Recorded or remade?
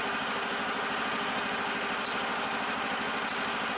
recorded